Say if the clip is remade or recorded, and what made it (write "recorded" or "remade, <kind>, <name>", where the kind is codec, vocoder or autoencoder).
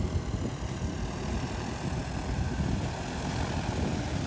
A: recorded